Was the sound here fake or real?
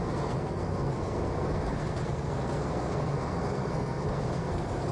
fake